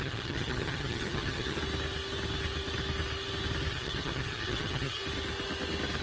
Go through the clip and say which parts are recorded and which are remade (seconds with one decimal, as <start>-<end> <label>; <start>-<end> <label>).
0.0-1.6 remade; 1.6-3.7 recorded; 3.7-5.0 remade; 5.0-6.0 recorded